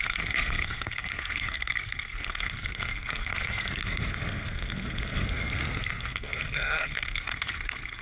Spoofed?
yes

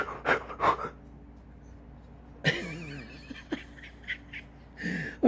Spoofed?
no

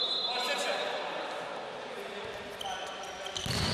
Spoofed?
no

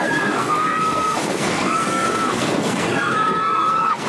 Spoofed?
yes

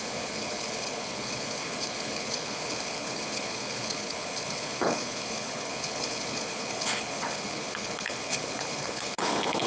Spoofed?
yes